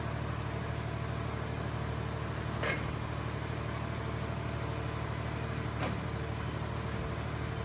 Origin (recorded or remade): recorded